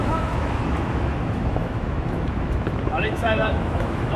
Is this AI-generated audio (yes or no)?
yes